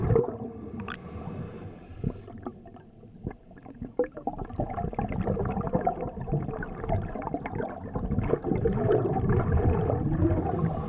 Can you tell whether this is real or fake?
real